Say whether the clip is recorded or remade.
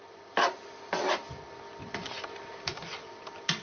recorded